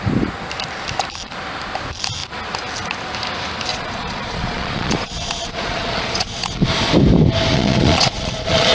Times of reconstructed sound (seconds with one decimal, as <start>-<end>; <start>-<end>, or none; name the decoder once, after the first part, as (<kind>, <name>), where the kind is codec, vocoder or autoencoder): 3.7-6.7 (vocoder, Vocos); 7.5-8.7